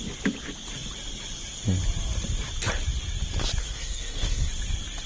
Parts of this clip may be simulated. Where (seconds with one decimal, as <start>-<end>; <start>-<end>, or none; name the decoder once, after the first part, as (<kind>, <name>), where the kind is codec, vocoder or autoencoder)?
3.6-4.5 (codec, SNAC)